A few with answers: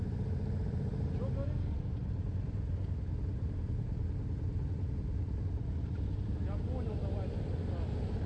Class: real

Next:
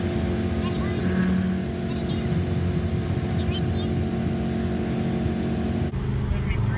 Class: real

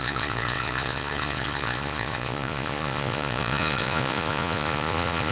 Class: fake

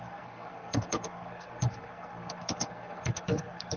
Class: fake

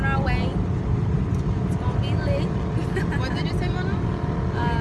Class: real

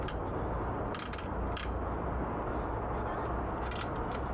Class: real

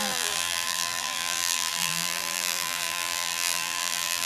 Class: fake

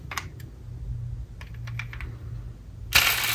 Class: real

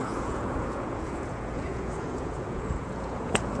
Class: fake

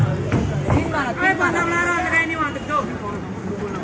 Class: real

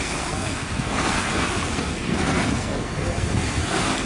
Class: fake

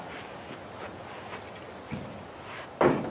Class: real